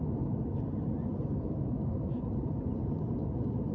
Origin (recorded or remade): recorded